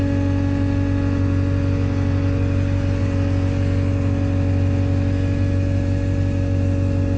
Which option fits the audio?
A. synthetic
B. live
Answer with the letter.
B